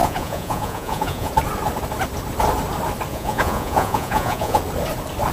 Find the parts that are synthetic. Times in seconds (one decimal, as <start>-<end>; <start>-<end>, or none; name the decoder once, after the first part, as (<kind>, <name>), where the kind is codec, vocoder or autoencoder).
0.0-1.3 (vocoder, Vocos); 3.1-4.6